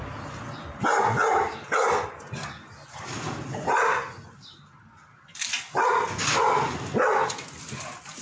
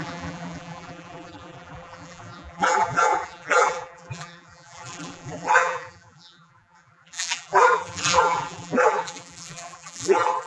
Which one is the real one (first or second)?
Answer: first